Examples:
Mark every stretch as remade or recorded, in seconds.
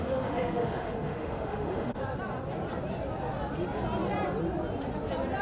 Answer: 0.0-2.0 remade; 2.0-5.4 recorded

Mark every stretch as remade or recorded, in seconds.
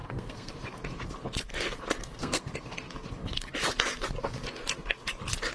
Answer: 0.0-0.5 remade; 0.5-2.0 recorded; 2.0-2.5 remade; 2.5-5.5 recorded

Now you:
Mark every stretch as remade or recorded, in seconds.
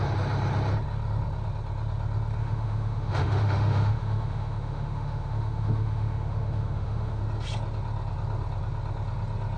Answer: 0.0-2.4 recorded; 2.4-7.2 remade; 7.2-9.6 recorded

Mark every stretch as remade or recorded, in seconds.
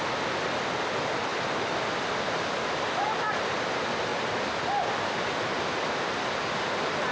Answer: 0.0-7.1 recorded